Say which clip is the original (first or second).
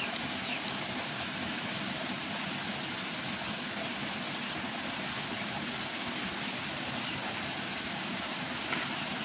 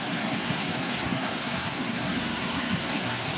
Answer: first